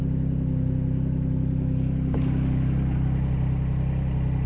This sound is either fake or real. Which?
real